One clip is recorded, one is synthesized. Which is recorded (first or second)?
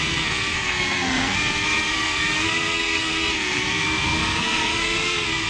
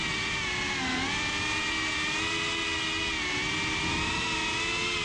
second